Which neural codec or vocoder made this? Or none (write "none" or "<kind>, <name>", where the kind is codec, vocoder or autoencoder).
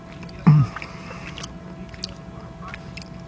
none